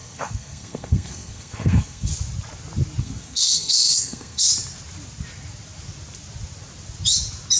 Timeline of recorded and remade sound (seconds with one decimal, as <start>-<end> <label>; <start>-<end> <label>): 0.0-2.1 remade; 2.1-3.0 recorded; 3.0-4.5 remade; 4.5-7.6 recorded